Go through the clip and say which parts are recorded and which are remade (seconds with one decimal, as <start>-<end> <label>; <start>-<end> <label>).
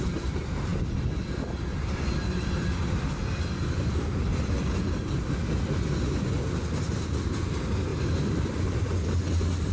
0.0-9.7 recorded